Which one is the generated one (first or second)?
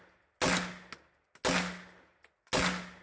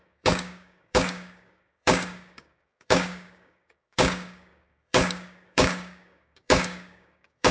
second